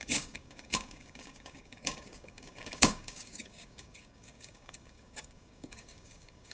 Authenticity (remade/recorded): remade